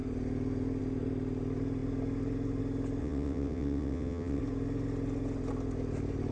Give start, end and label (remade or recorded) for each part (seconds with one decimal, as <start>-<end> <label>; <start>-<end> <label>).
0.0-3.0 recorded; 3.0-4.4 remade; 4.4-6.3 recorded